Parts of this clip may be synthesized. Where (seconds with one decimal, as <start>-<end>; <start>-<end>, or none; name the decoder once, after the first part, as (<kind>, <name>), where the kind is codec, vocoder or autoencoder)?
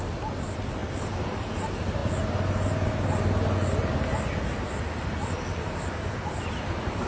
none